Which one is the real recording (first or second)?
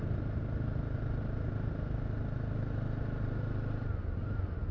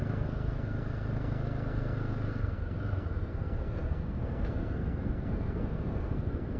first